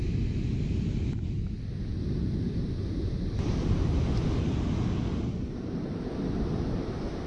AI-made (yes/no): no